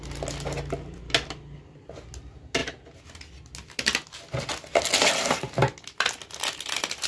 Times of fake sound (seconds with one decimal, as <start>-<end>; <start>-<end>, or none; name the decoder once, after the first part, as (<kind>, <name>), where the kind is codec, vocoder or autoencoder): none